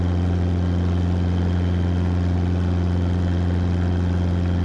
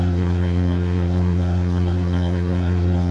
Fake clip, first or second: second